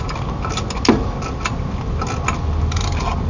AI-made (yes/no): no